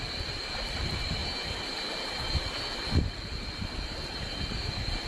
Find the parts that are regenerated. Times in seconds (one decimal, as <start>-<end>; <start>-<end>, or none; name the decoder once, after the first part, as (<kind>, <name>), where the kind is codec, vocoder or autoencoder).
none